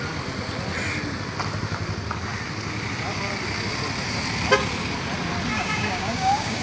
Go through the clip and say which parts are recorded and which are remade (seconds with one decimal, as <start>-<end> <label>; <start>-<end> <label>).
0.0-5.5 recorded; 5.5-6.6 remade